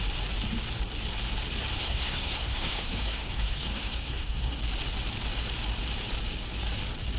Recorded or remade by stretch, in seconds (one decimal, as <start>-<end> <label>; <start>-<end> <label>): 0.0-1.8 recorded; 1.8-4.6 remade; 4.6-7.2 recorded